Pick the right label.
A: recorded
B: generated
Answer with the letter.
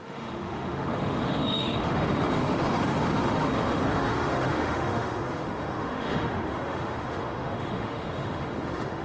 B